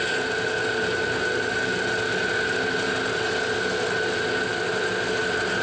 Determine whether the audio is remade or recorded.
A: recorded